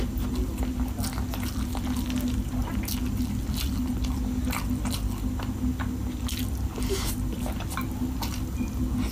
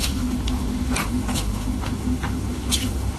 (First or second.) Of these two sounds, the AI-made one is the second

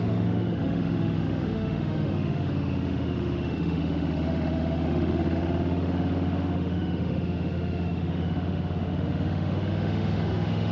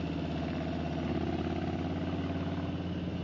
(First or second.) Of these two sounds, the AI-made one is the first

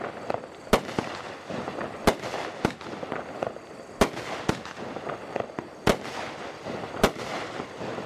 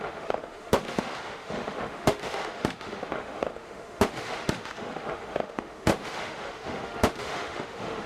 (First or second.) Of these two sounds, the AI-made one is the second